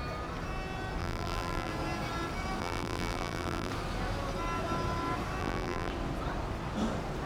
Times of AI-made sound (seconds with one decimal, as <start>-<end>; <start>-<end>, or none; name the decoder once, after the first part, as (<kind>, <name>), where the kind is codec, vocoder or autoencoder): 1.0-1.7 (vocoder, BigVGAN v2); 2.6-3.7; 5.4-5.9